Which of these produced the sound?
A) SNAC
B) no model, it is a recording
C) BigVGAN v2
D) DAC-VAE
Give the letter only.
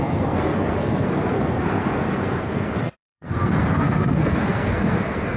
A